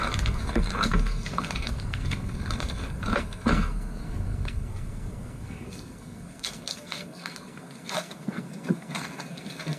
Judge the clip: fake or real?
fake